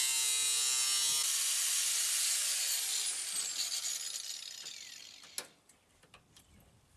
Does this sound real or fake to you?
real